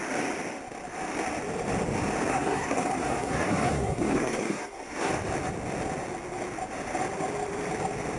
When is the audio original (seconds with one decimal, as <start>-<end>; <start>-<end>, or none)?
0.0-2.3; 5.1-8.2